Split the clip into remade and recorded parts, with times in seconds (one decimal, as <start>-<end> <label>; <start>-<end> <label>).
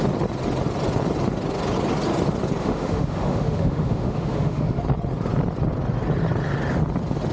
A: 0.0-2.6 recorded; 2.6-4.8 remade; 4.8-7.3 recorded